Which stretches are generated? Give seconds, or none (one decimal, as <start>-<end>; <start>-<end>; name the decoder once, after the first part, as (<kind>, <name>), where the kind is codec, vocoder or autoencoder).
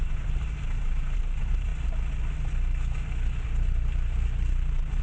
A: 0.0-1.7 (vocoder, BigVGAN v2); 3.5-5.0